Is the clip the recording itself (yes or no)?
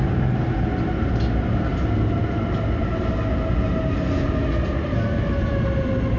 yes